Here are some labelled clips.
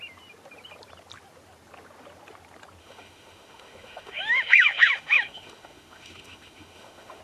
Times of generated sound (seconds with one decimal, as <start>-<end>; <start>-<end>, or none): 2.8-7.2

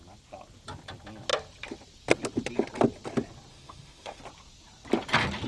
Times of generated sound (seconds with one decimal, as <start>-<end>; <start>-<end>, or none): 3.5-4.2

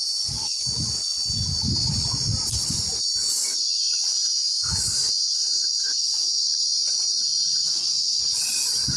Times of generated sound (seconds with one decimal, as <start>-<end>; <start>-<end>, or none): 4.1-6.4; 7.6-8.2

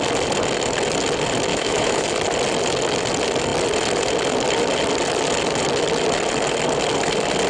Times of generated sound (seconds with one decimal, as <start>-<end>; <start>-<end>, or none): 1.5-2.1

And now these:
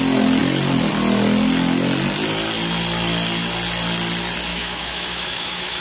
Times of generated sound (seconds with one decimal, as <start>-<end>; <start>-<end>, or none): 4.5-5.8

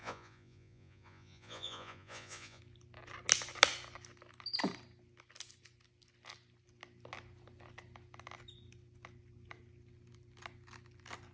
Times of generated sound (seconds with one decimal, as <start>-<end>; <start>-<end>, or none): 0.0-2.6

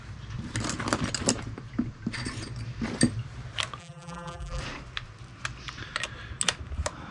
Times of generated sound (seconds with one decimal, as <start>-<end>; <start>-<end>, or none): 3.8-4.6